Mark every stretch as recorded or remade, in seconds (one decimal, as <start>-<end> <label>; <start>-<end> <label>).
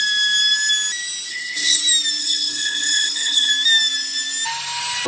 0.0-1.3 recorded; 1.3-1.8 remade; 1.8-2.2 recorded; 2.2-3.5 remade; 3.5-5.1 recorded